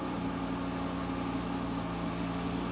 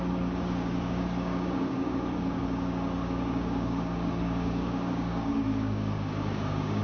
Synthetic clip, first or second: second